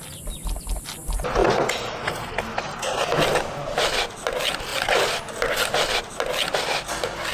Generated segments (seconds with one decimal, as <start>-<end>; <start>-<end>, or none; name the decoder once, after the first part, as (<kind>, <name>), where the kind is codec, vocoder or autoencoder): none